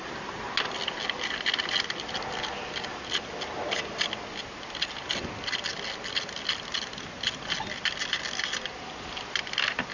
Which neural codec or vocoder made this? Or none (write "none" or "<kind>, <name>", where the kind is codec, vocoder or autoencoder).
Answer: none